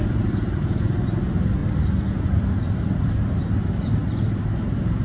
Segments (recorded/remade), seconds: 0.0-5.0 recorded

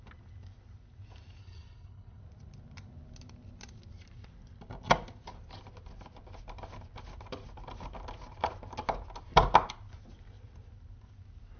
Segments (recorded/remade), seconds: 0.0-1.4 recorded; 1.4-2.2 remade; 2.2-11.6 recorded

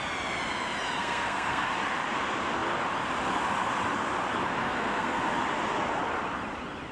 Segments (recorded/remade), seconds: 0.0-1.0 recorded; 1.0-1.7 remade; 1.7-4.6 recorded; 4.6-5.2 remade; 5.2-6.9 recorded